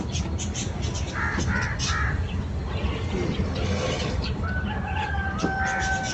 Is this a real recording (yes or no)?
yes